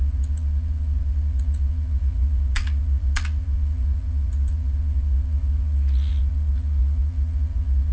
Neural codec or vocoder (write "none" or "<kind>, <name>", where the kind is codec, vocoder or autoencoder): vocoder, Vocos